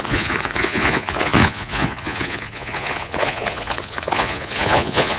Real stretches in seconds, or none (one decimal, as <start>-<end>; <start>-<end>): none